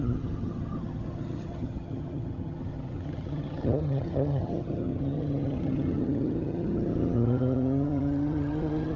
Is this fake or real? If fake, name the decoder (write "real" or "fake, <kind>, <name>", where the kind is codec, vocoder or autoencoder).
fake, vocoder, HiFi-GAN